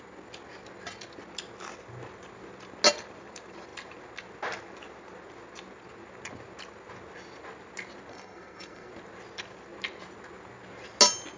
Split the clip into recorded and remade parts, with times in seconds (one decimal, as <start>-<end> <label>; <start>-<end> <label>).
0.0-8.1 recorded; 8.1-8.9 remade; 8.9-11.4 recorded